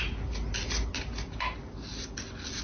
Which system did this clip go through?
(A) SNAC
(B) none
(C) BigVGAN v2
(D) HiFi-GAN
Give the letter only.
B